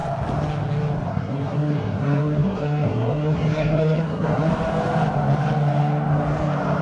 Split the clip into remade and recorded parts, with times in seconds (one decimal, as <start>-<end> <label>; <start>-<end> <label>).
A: 0.0-1.1 recorded; 1.1-4.5 remade; 4.5-6.8 recorded